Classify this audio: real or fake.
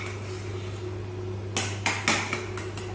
real